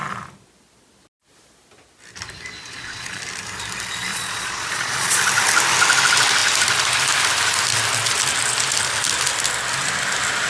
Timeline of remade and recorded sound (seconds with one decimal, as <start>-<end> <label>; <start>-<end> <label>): 0.0-2.6 recorded; 2.6-3.2 remade; 3.2-4.1 recorded; 4.1-5.2 remade; 5.2-10.5 recorded